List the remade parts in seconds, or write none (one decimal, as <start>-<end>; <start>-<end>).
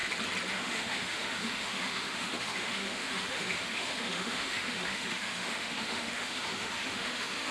0.5-7.5